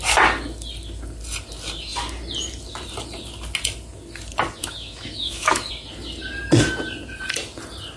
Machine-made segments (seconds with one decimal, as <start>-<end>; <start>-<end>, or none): 4.6-5.7